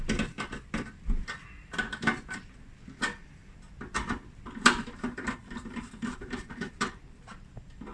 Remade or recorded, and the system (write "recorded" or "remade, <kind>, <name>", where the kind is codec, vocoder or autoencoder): recorded